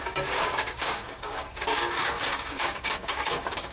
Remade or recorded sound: remade